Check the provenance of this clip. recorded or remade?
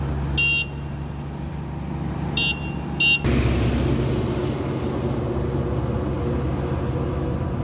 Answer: recorded